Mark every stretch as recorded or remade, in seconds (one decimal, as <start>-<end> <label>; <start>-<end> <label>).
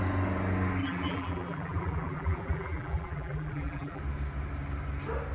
0.0-0.8 recorded; 0.8-4.0 remade; 4.0-5.3 recorded